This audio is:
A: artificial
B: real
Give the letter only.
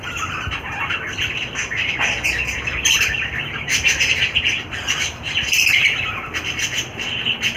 A